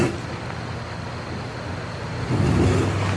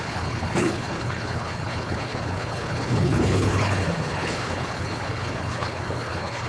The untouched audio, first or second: first